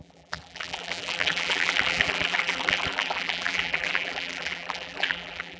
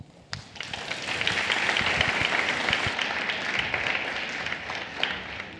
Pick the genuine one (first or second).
second